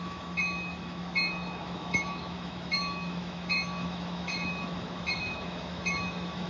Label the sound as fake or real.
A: fake